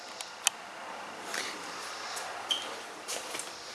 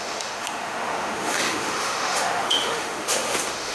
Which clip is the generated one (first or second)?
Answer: second